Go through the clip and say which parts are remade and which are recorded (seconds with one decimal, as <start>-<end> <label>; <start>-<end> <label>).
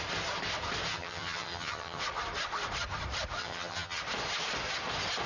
0.0-0.9 recorded; 0.9-2.0 remade; 2.0-3.4 recorded; 3.4-4.0 remade; 4.0-5.3 recorded